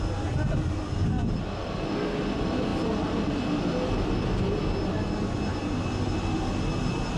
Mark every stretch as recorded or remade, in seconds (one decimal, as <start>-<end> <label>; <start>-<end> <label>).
0.0-7.2 recorded